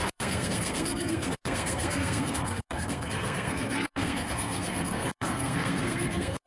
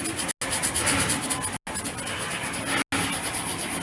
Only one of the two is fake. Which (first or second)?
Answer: first